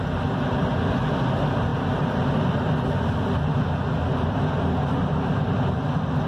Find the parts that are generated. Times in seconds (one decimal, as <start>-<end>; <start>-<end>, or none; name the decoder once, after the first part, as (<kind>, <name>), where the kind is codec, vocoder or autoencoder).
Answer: none